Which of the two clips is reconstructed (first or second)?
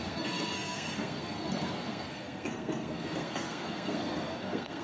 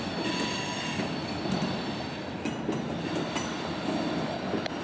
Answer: first